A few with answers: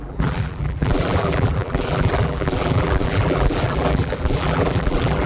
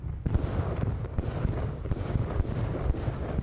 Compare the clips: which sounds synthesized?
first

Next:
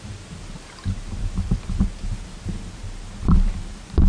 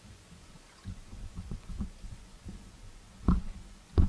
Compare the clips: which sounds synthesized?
second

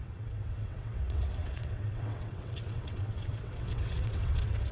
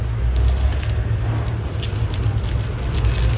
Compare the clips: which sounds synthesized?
first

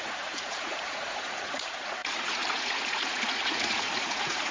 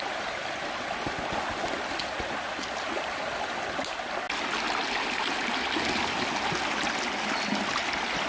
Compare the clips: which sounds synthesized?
first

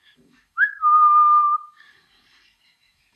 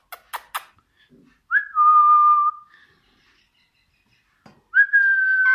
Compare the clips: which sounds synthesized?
first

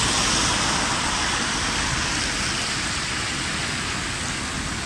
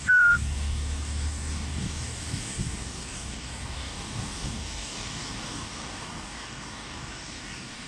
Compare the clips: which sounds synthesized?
second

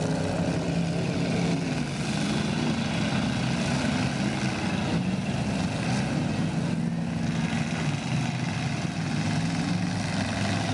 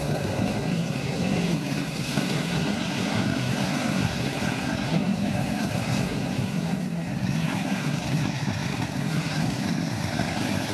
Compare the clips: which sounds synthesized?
second